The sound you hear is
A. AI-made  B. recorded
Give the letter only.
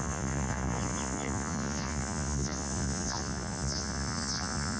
A